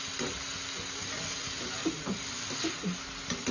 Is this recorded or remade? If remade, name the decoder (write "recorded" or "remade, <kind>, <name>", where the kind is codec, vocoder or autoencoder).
recorded